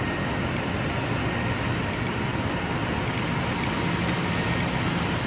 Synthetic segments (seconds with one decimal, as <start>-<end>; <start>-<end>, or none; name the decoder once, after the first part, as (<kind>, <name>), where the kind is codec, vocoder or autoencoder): none